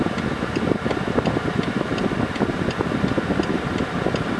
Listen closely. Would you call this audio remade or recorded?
recorded